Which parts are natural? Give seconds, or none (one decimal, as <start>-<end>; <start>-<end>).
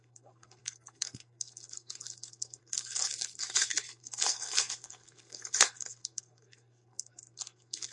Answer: none